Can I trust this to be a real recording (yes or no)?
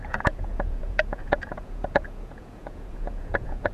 no